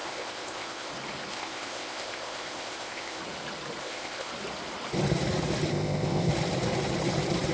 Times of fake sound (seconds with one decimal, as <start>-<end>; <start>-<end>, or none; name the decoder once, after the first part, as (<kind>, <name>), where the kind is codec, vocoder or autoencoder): 0.0-0.9 (codec, ZipCodec); 1.3-3.2; 3.8-4.3; 5.7-6.3